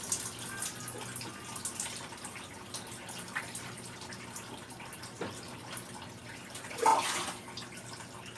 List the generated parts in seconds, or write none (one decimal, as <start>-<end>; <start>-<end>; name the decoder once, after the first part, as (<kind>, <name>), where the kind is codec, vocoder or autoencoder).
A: none